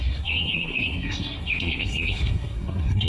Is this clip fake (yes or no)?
yes